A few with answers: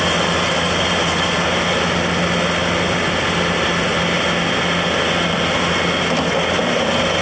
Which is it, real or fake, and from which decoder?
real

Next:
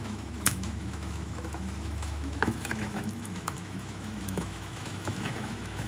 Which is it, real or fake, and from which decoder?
fake, autoencoder, DAC-VAE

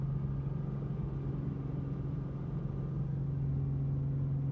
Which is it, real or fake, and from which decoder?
real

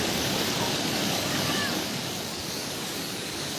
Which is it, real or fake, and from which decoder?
fake, codec, DAC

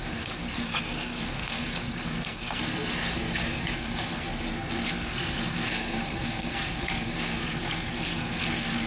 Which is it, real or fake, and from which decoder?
fake, codec, SNAC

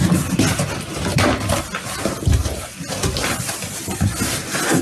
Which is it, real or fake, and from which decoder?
real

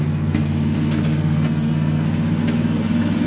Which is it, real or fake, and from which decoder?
fake, codec, SNAC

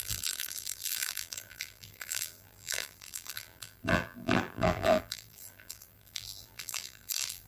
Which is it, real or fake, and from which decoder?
fake, vocoder, BigVGAN v2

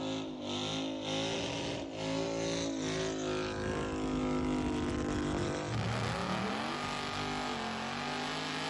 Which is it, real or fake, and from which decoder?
real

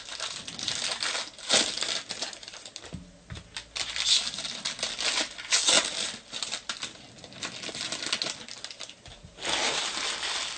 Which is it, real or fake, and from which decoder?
real